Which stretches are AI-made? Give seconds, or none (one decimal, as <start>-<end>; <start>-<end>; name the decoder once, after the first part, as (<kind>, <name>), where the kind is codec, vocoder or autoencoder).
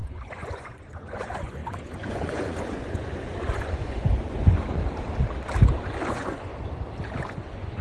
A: 0.0-4.8 (vocoder, Vocos); 6.1-6.5; 7.3-7.8